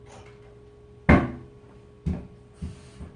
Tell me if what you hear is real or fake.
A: real